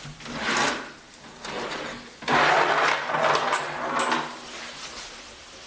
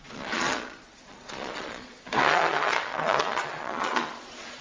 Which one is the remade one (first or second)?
second